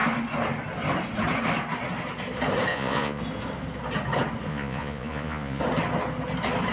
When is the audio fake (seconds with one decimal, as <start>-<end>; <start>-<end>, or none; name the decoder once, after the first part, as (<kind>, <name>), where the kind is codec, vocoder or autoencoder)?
2.7-3.2 (vocoder, Vocos); 4.5-5.6